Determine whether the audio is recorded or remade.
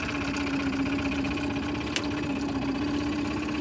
recorded